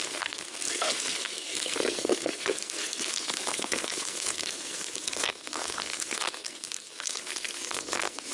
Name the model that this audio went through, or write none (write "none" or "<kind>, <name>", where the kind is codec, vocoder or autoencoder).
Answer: codec, SNAC